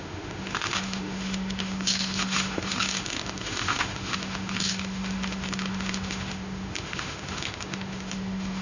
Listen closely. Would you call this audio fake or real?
fake